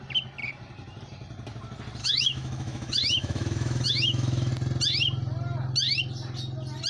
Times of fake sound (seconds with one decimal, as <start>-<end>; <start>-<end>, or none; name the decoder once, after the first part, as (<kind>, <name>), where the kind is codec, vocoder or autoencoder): 2.0-4.5 (autoencoder, DAC-VAE)